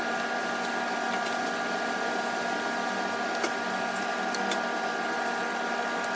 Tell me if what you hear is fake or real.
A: real